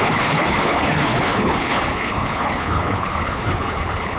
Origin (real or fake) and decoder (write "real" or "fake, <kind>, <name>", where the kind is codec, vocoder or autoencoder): fake, codec, HILCodec